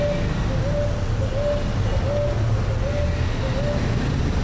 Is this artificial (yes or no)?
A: no